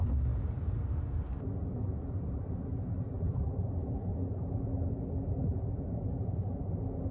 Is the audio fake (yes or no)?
no